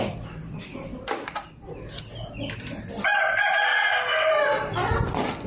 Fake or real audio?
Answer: real